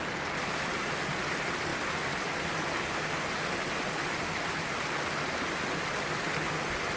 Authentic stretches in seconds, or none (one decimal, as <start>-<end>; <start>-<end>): 0.0-7.0